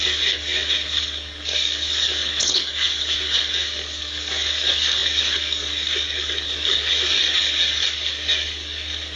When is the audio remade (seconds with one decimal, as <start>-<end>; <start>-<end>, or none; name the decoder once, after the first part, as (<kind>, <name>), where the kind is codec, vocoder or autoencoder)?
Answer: 0.0-9.2 (codec, DAC)

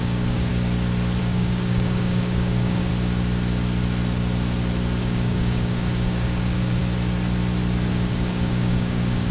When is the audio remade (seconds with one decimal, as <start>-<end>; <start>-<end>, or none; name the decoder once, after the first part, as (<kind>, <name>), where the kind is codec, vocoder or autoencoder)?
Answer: 0.0-0.5 (codec, DAC); 1.2-2.9; 5.0-6.8; 7.9-9.3

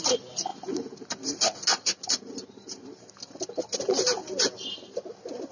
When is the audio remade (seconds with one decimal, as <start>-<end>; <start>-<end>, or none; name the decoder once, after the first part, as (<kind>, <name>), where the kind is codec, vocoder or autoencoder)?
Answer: none

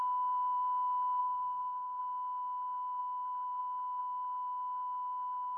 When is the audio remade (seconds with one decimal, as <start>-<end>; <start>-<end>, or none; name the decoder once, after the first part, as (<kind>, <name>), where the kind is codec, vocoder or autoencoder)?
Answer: 1.2-2.0 (codec, DAC)

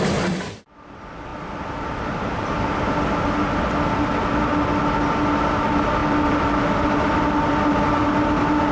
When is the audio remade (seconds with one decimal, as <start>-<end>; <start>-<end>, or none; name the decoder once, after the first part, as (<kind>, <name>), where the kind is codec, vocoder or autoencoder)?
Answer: none

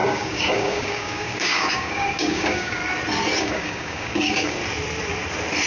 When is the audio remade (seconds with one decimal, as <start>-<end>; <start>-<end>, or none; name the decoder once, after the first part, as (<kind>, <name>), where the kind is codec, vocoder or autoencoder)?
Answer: 0.0-2.8 (codec, DAC); 3.4-4.6

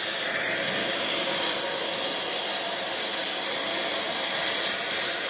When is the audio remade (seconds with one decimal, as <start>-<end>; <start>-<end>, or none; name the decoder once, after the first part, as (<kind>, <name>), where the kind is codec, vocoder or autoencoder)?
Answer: 0.8-1.5 (codec, DAC)